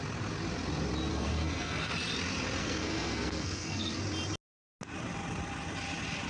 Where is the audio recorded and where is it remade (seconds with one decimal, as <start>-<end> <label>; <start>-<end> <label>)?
0.0-1.1 recorded; 1.1-1.9 remade; 1.9-2.6 recorded; 2.6-4.0 remade; 4.0-6.3 recorded